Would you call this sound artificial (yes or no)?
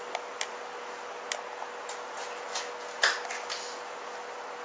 no